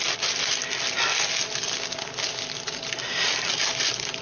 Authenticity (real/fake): real